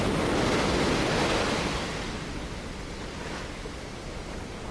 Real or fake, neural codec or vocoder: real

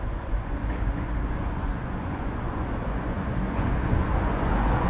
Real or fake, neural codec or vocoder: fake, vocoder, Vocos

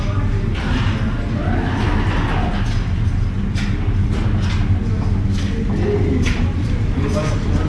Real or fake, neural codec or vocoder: real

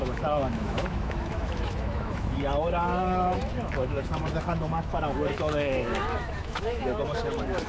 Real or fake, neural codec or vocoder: fake, autoencoder, DAC-VAE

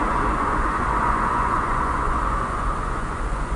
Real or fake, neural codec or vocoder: fake, vocoder, Vocos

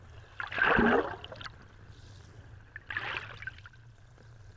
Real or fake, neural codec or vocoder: real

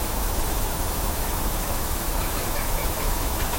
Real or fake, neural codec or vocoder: fake, autoencoder, DAC-VAE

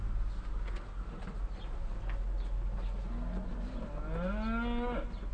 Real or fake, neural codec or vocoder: real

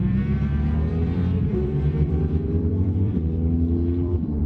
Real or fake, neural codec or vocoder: fake, vocoder, BigVGAN v2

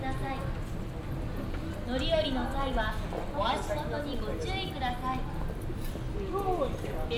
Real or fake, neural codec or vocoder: real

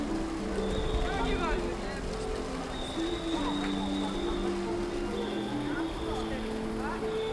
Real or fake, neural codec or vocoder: real